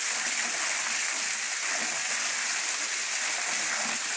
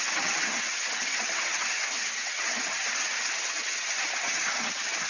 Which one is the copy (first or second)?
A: second